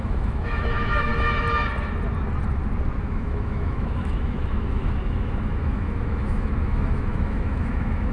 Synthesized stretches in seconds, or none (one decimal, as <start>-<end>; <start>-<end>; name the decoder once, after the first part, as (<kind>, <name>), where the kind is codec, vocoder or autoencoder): 0.0-1.1 (autoencoder, DAC-VAE); 3.0-8.1